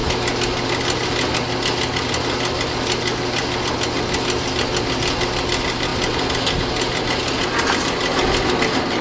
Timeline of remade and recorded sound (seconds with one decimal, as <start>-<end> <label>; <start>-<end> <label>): 0.0-9.0 recorded

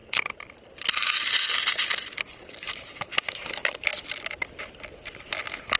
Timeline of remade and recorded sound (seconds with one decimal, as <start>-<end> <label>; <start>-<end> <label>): 0.0-3.5 remade; 3.5-5.8 recorded

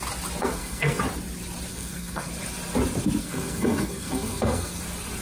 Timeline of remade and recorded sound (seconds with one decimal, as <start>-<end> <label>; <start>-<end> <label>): 0.0-0.4 recorded; 0.4-1.0 remade; 1.0-1.7 recorded; 1.7-2.3 remade; 2.3-3.2 recorded; 3.2-4.8 remade; 4.8-5.2 recorded

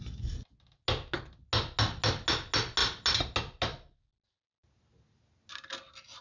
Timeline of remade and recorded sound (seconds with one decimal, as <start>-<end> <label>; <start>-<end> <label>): 0.0-6.2 recorded

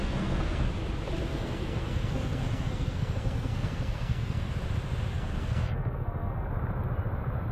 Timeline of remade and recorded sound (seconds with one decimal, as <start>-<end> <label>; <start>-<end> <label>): 0.0-0.7 remade; 0.7-1.3 recorded; 1.3-4.5 remade; 4.5-5.1 recorded; 5.1-6.5 remade; 6.5-7.5 recorded

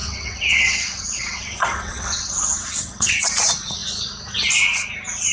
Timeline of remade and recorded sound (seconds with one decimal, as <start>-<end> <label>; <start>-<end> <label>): 0.0-3.2 remade; 3.2-5.3 recorded

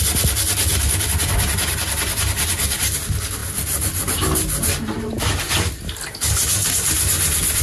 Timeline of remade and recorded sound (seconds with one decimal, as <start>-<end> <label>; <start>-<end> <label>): 0.0-7.6 recorded